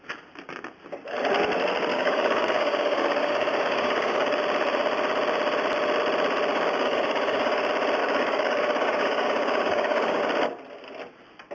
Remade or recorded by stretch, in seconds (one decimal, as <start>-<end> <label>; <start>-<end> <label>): 0.0-1.9 recorded; 1.9-4.4 remade; 4.4-6.5 recorded; 6.5-7.6 remade; 7.6-8.0 recorded; 8.0-10.2 remade; 10.2-11.5 recorded